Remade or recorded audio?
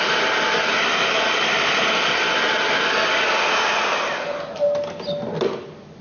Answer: recorded